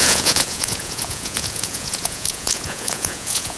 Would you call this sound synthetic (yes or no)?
yes